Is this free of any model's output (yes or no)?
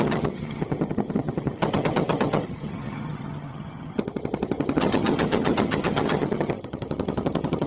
no